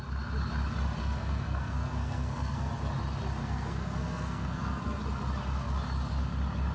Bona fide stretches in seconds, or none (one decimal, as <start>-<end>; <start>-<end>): 0.0-1.0; 2.7-3.4; 5.0-6.7